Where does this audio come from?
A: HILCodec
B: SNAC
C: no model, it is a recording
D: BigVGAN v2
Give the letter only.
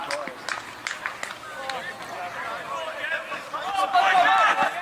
C